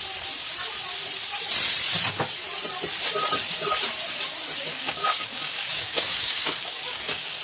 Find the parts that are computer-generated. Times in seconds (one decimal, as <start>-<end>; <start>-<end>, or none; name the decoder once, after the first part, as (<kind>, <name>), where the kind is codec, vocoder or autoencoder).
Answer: 4.7-7.4 (codec, DAC)